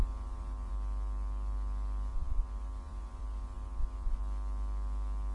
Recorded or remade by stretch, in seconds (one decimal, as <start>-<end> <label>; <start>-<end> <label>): 0.0-0.7 remade; 0.7-2.1 recorded; 2.1-4.2 remade; 4.2-5.3 recorded